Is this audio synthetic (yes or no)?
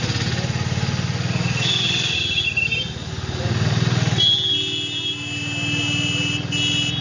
no